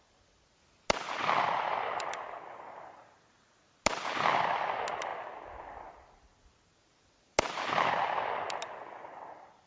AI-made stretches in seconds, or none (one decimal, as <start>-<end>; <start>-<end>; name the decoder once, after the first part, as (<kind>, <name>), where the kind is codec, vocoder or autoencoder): none